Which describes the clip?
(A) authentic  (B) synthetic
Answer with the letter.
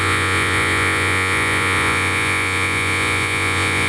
B